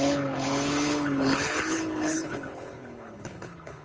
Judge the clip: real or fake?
fake